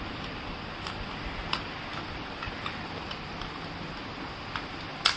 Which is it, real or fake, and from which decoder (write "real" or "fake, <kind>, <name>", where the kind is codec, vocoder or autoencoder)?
real